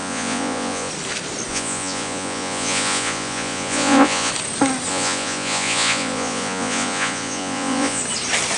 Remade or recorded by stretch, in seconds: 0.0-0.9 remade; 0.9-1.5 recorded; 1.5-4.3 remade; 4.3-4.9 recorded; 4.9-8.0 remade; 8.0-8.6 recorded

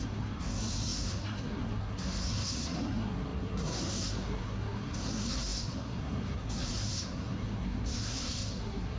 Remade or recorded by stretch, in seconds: 0.0-9.0 remade

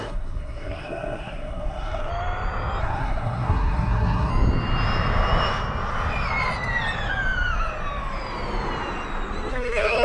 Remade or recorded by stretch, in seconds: 0.0-2.1 remade; 2.1-2.8 recorded; 2.8-4.3 remade; 4.3-9.5 recorded; 9.5-10.0 remade

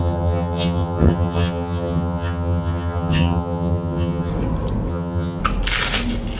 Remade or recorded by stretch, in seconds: 0.0-4.3 remade; 4.3-4.9 recorded; 4.9-5.4 remade; 5.4-6.4 recorded

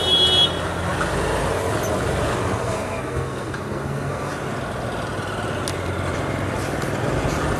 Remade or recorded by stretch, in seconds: 0.0-2.6 recorded; 2.6-4.3 remade; 4.3-7.6 recorded

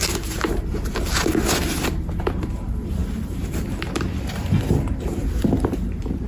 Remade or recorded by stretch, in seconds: 0.0-0.9 remade; 0.9-2.2 recorded; 2.2-6.3 remade

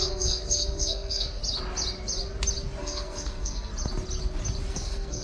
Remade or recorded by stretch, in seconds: 0.0-1.4 remade; 1.4-2.8 recorded; 2.8-3.7 remade; 3.7-4.7 recorded; 4.7-5.2 remade

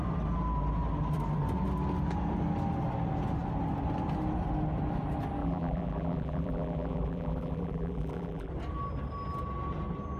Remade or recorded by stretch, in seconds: 0.0-5.4 recorded; 5.4-8.5 remade; 8.5-10.2 recorded